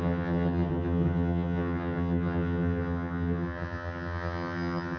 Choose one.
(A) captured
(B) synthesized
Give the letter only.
B